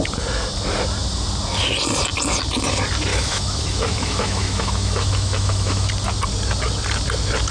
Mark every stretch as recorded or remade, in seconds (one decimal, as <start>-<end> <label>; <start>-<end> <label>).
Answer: 0.0-3.1 recorded; 3.1-5.9 remade; 5.9-7.5 recorded